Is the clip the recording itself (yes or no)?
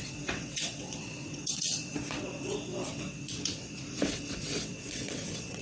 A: no